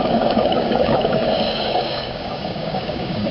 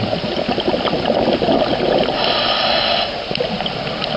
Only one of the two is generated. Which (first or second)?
first